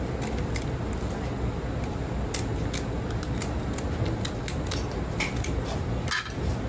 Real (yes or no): yes